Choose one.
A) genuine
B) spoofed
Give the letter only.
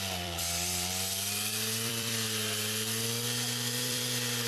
B